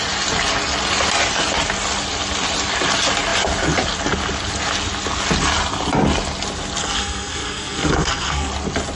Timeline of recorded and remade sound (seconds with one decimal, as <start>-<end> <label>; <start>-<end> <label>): 0.0-6.8 recorded; 6.8-8.5 remade; 8.5-9.0 recorded